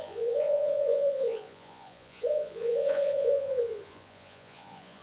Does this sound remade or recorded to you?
remade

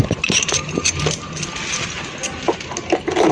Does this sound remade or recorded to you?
recorded